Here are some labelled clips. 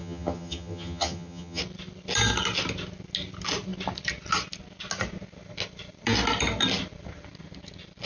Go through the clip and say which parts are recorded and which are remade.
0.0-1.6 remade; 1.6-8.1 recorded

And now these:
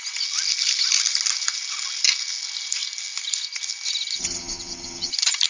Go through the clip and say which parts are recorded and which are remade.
0.0-4.2 recorded; 4.2-5.1 remade; 5.1-5.5 recorded

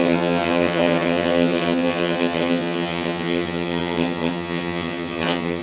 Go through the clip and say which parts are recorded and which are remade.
0.0-5.6 remade

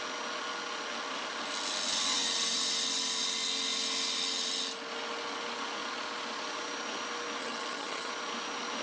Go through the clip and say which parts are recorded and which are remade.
0.0-7.4 recorded; 7.4-8.1 remade; 8.1-8.8 recorded

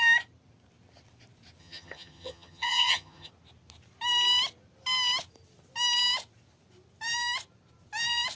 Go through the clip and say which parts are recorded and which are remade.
0.0-1.6 recorded; 1.6-3.3 remade; 3.3-8.4 recorded

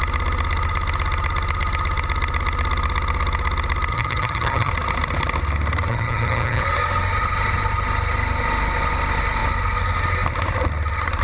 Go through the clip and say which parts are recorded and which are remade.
0.0-3.9 recorded; 3.9-4.7 remade; 4.7-5.9 recorded; 5.9-6.6 remade; 6.6-11.2 recorded